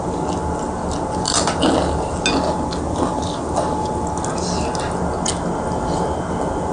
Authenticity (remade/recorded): recorded